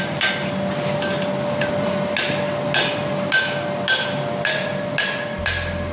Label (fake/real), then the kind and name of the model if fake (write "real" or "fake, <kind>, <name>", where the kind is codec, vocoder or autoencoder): real